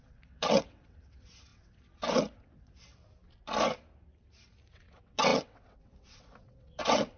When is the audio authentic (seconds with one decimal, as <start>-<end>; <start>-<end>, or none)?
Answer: 3.0-4.7